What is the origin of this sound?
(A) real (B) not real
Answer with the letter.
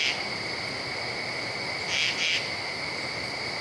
A